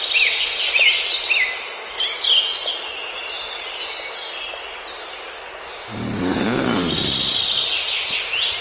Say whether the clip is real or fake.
real